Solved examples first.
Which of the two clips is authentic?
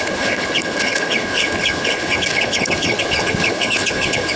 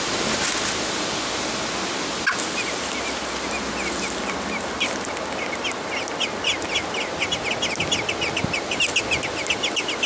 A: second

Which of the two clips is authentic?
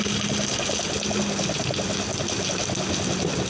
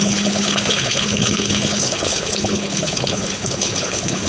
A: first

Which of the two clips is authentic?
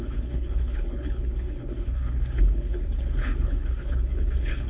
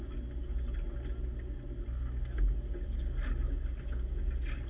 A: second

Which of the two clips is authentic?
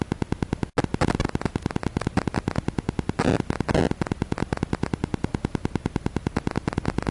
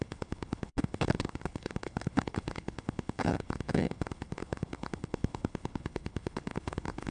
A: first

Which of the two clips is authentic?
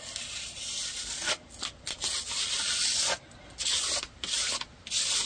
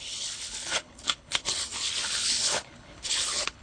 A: first